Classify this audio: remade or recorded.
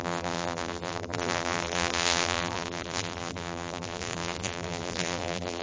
remade